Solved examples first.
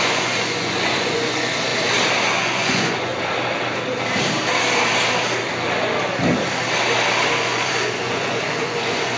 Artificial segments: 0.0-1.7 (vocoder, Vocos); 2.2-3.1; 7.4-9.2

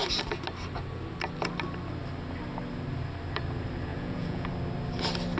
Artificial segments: 3.9-4.5 (vocoder, Vocos)

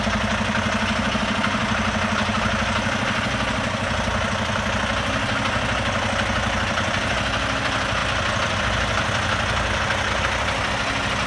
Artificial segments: none

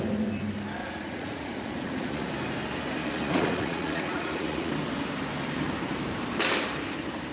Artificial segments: 0.8-2.3 (vocoder, Vocos); 3.0-4.7

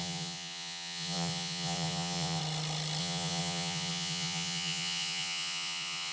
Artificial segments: 0.0-2.4 (vocoder, Vocos); 3.0-6.1

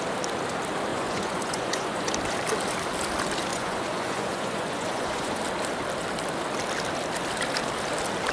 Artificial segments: 0.9-2.1 (vocoder, Vocos); 3.5-5.4

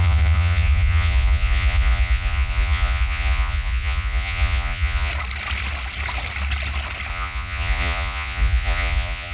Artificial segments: 0.0-5.1 (vocoder, Vocos); 7.1-9.3